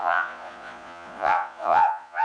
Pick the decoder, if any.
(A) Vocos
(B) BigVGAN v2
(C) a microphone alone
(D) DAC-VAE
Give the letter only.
A